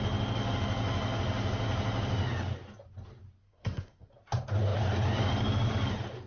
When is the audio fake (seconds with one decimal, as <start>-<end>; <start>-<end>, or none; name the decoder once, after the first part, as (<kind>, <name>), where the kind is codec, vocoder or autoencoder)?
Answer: 3.4-4.1 (codec, SNAC)